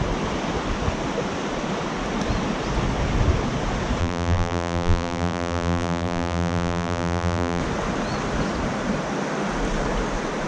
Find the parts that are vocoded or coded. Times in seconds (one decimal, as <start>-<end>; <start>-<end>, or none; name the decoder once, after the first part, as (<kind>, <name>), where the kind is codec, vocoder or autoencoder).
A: 4.0-7.6 (vocoder, BigVGAN v2)